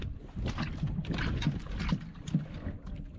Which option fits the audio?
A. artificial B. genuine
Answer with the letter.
B